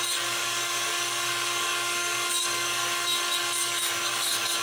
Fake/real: fake